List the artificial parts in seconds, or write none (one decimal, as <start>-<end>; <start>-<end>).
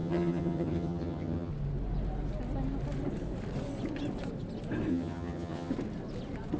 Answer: 0.0-1.5; 4.9-5.7